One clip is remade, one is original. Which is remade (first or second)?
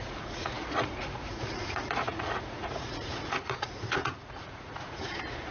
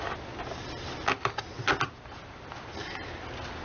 first